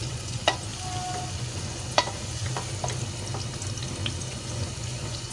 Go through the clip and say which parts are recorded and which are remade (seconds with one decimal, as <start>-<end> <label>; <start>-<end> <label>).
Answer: 0.0-0.7 remade; 0.7-1.3 recorded; 1.3-2.4 remade; 2.4-4.3 recorded; 4.3-5.3 remade